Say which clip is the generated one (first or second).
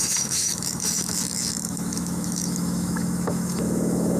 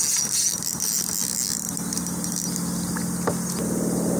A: first